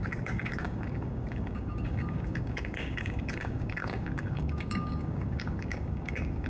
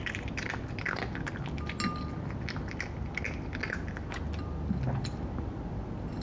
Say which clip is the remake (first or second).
first